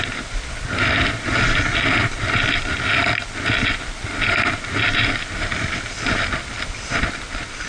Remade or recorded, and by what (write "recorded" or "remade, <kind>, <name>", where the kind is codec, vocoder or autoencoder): recorded